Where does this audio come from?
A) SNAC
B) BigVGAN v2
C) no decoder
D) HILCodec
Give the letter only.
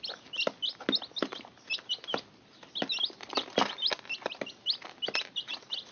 C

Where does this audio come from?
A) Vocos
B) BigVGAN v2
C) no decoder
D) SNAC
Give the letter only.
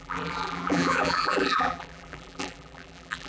B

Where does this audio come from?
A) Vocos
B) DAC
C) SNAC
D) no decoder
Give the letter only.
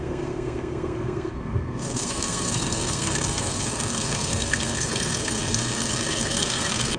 C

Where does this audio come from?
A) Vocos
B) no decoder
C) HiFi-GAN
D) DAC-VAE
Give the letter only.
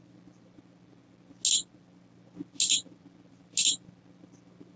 B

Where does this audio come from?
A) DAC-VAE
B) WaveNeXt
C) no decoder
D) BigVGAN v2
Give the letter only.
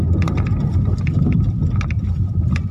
C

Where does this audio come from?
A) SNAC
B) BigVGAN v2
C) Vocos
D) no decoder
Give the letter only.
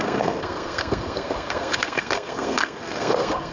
A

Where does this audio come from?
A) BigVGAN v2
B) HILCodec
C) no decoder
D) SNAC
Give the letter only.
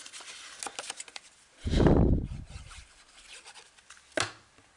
C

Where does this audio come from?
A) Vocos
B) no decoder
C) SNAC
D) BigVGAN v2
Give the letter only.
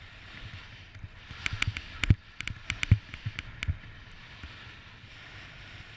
B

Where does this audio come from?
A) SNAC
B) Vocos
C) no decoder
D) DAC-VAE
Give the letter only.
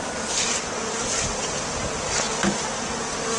C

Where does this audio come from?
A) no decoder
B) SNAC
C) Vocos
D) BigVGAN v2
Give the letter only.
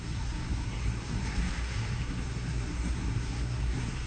B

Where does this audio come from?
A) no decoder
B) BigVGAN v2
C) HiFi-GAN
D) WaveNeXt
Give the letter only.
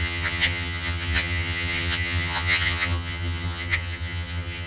C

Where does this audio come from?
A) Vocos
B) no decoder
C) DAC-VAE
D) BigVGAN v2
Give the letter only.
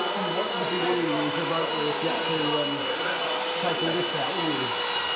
B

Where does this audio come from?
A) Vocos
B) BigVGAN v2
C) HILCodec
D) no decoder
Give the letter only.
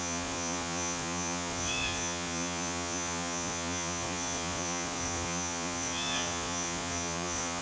A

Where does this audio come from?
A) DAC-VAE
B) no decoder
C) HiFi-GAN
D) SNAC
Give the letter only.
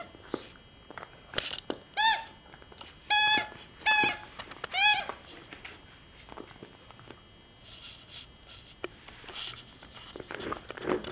B